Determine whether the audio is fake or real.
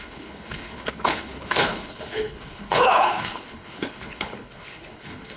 fake